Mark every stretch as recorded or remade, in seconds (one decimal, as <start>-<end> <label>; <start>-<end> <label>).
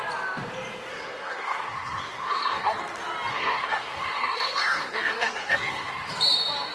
0.0-0.9 recorded; 0.9-2.8 remade; 2.8-3.3 recorded; 3.3-6.1 remade; 6.1-6.7 recorded